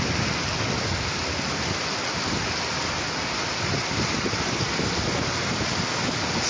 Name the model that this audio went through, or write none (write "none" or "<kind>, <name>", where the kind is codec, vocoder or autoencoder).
none